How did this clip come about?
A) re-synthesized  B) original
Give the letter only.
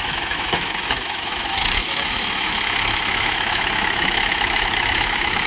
A